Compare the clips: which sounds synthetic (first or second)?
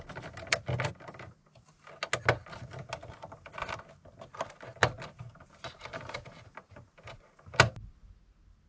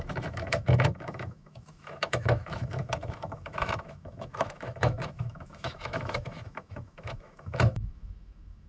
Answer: second